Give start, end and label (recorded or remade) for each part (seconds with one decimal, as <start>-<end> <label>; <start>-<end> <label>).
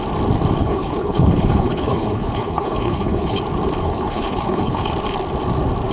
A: 0.0-0.6 recorded; 0.6-3.4 remade; 3.4-3.8 recorded; 3.8-4.9 remade; 4.9-5.9 recorded